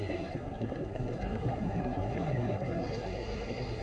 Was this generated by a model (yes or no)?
yes